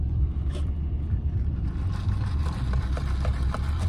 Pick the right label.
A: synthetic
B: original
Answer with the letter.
B